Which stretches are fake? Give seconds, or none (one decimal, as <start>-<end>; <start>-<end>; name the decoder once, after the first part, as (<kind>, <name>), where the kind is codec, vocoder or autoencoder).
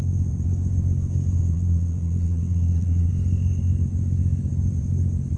1.4-3.1 (vocoder, Vocos)